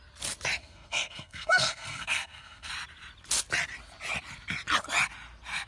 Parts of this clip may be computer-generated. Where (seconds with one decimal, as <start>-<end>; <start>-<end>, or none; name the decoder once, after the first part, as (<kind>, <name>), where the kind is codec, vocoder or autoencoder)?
0.6-2.7 (codec, SNAC)